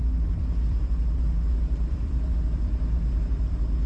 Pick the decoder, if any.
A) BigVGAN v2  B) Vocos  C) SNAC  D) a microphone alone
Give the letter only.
A